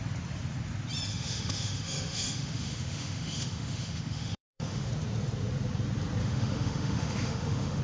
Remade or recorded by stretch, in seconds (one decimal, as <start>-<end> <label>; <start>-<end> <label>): 0.0-1.1 recorded; 1.1-4.9 remade; 4.9-6.2 recorded; 6.2-7.8 remade